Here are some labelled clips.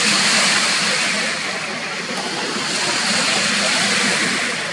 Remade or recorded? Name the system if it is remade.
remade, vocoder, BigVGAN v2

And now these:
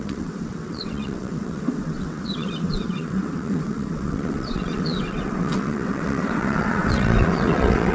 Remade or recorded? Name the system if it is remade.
remade, vocoder, WaveNeXt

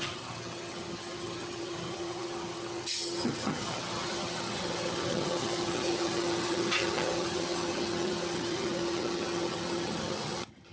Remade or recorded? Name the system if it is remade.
remade, vocoder, HiFi-GAN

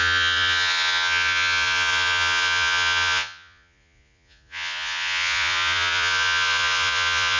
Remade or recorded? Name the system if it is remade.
remade, vocoder, Vocos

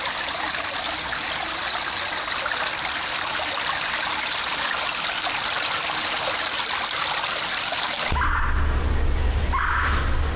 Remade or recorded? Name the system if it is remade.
recorded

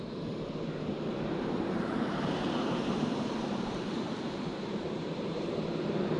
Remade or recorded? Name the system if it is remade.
remade, vocoder, BigVGAN v2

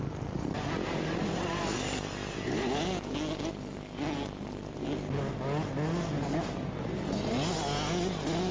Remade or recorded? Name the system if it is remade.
recorded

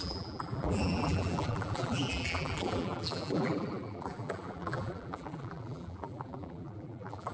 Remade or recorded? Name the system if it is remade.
remade, vocoder, BigVGAN v2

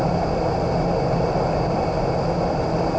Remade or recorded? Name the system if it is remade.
recorded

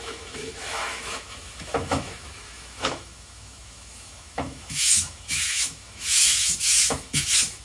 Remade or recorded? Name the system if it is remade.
remade, autoencoder, DAC-VAE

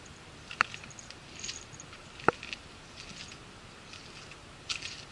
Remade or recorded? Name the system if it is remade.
recorded